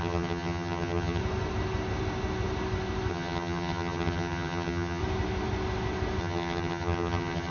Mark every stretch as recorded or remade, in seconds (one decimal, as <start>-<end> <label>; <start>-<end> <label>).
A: 0.0-1.2 remade; 1.2-3.1 recorded; 3.1-5.0 remade; 5.0-6.2 recorded; 6.2-7.5 remade